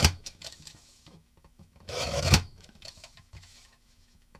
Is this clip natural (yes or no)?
no